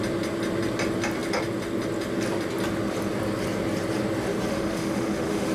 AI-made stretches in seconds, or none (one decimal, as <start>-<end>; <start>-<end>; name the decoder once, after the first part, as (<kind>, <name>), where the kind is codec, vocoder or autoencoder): 4.5-5.5 (autoencoder, DAC-VAE)